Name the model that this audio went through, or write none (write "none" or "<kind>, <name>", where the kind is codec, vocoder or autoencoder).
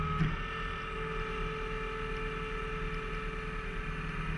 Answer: none